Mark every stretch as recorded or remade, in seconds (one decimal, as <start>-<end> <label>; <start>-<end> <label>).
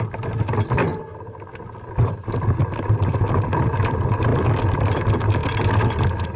0.0-6.4 recorded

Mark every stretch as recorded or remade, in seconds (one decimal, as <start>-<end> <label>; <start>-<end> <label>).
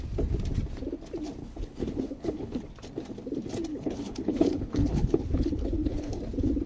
0.0-1.4 recorded; 1.4-2.6 remade; 2.6-3.7 recorded; 3.7-6.2 remade; 6.2-6.7 recorded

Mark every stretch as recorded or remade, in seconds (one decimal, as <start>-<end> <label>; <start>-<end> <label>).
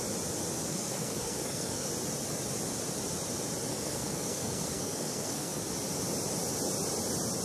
0.0-0.7 recorded; 0.7-1.9 remade; 1.9-3.7 recorded; 3.7-5.6 remade; 5.6-7.4 recorded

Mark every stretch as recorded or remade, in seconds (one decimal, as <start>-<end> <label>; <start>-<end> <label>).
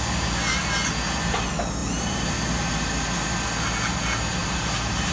0.0-1.8 recorded; 1.8-2.9 remade; 2.9-4.4 recorded; 4.4-5.1 remade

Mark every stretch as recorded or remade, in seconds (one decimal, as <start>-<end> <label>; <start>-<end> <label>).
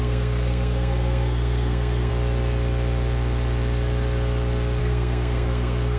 0.0-2.1 remade; 2.1-4.8 recorded; 4.8-6.0 remade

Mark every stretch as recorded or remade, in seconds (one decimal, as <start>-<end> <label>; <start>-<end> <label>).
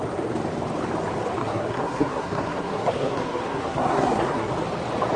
0.0-1.4 recorded; 1.4-4.5 remade; 4.5-5.2 recorded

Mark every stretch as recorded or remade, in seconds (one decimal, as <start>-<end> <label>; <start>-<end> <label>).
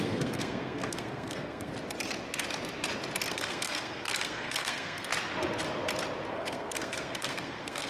0.0-1.7 remade; 1.7-3.3 recorded; 3.3-5.1 remade; 5.1-6.3 recorded; 6.3-7.9 remade